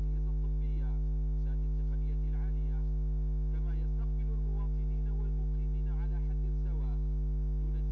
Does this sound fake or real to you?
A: real